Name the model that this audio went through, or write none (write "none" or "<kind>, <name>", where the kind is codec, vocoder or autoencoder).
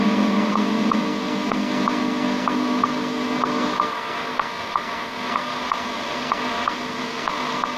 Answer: codec, SNAC